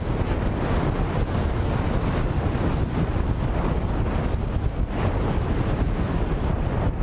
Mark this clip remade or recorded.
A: recorded